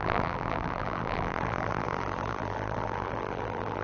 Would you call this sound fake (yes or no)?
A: yes